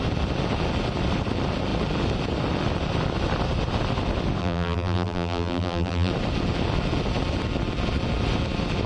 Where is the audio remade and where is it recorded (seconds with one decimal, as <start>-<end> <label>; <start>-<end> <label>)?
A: 0.0-4.4 recorded; 4.4-6.1 remade; 6.1-8.9 recorded